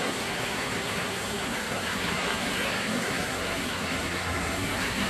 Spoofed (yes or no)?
yes